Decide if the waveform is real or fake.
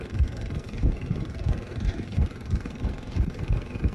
fake